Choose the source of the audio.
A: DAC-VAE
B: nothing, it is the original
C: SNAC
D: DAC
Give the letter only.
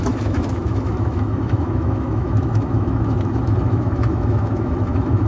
A